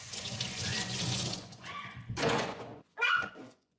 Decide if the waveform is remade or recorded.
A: remade